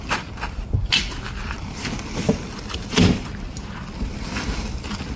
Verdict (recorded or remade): recorded